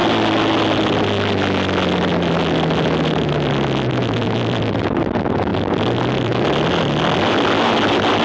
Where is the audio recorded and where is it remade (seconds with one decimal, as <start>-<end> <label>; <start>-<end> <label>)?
0.0-8.2 recorded